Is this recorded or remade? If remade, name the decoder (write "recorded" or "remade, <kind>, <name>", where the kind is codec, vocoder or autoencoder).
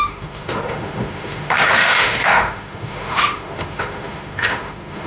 remade, autoencoder, DAC-VAE